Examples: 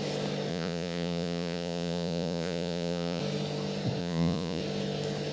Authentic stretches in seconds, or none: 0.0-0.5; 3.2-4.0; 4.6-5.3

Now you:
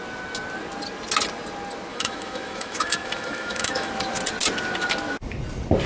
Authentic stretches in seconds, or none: 0.0-1.9; 3.9-5.9

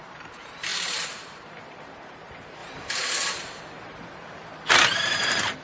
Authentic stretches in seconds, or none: none